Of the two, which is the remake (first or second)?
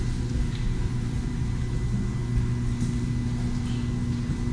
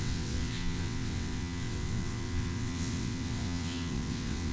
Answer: second